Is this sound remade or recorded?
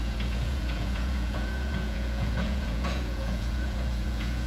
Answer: remade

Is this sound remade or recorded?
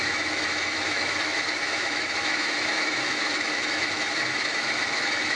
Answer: remade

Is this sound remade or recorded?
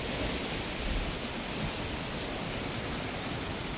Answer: recorded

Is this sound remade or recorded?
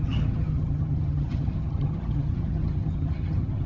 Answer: remade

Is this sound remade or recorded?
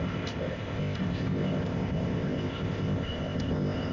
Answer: remade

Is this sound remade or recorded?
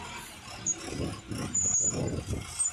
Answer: recorded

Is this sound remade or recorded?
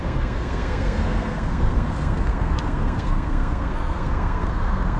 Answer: remade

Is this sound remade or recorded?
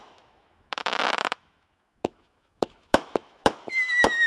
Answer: remade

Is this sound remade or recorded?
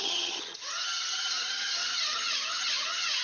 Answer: remade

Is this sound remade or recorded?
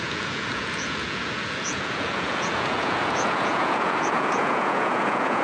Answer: remade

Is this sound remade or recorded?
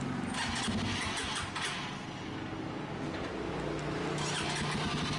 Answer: recorded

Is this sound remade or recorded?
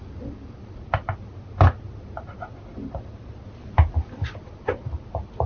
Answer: recorded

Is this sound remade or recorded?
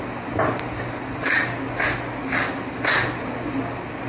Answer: recorded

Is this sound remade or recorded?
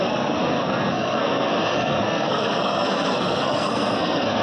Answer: remade